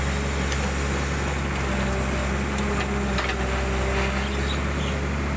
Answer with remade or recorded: recorded